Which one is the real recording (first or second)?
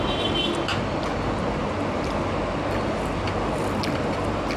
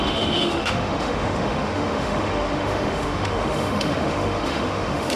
first